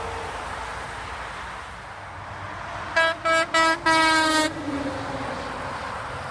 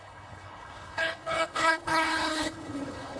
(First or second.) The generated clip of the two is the second